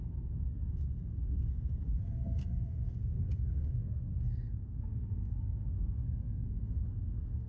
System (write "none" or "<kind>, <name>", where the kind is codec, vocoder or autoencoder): codec, SNAC